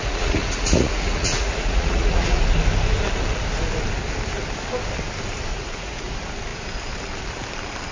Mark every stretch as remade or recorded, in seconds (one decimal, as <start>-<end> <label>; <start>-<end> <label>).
0.0-2.4 remade; 2.4-5.5 recorded; 5.5-6.1 remade; 6.1-7.9 recorded